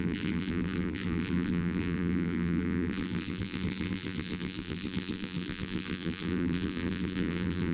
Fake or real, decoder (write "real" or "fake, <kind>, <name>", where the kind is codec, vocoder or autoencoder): fake, vocoder, BigVGAN v2